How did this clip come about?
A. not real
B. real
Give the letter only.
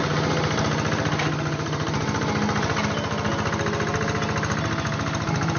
B